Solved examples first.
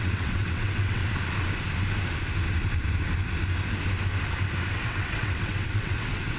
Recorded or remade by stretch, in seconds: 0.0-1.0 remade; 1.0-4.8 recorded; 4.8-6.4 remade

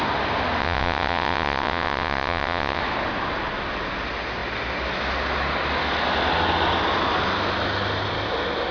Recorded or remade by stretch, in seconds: 0.0-0.6 recorded; 0.6-2.8 remade; 2.8-8.7 recorded

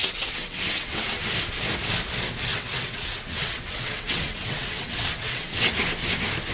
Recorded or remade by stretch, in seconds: 0.0-1.2 remade; 1.2-2.5 recorded; 2.5-5.7 remade; 5.7-6.5 recorded

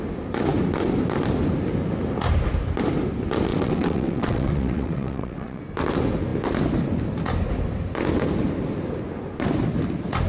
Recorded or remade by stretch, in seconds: 0.0-3.5 recorded; 3.5-5.6 remade; 5.6-10.3 recorded

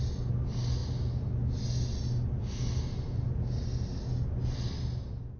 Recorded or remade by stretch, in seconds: 0.0-5.4 recorded

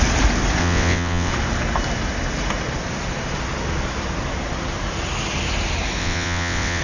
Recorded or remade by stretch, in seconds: 0.0-0.6 recorded; 0.6-1.3 remade; 1.3-6.0 recorded; 6.0-6.8 remade